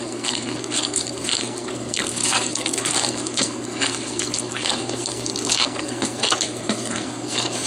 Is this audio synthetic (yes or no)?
yes